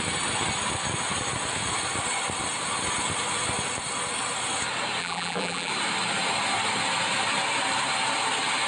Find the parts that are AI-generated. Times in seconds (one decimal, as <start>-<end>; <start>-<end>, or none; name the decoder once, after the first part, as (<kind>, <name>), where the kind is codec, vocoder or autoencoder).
5.0-5.7 (vocoder, BigVGAN v2)